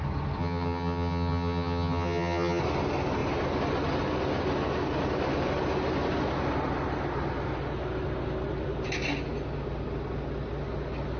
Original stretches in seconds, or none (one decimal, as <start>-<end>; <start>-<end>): 0.0-0.4; 2.6-11.2